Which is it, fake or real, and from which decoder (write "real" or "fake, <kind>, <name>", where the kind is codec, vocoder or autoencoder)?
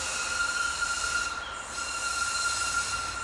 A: real